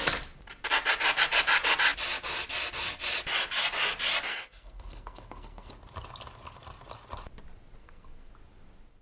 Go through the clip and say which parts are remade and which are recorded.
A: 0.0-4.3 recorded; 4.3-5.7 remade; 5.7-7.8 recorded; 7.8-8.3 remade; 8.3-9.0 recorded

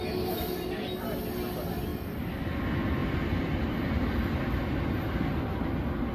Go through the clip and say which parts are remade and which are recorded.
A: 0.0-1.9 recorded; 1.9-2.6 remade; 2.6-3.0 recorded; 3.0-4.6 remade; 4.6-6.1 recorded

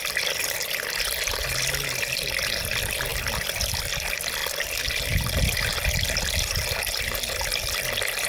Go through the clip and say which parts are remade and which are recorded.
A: 0.0-8.3 recorded

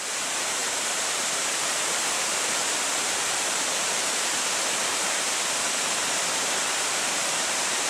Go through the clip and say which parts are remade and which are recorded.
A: 0.0-0.6 recorded; 0.6-5.3 remade; 5.3-7.2 recorded; 7.2-7.9 remade

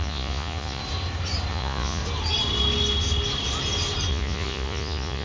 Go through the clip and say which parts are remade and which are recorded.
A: 0.0-0.8 remade; 0.8-1.5 recorded; 1.5-2.0 remade; 2.0-4.1 recorded; 4.1-5.2 remade

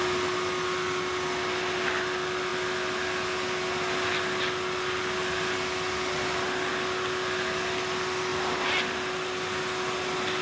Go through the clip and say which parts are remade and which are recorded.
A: 0.0-10.4 recorded